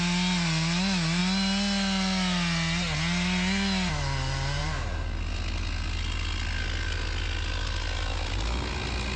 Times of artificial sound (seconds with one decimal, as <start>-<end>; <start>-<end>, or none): none